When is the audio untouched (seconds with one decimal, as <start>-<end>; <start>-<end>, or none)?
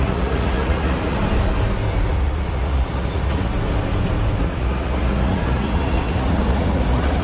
1.2-2.1; 3.5-4.4